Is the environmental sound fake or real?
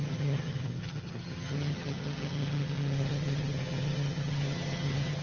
fake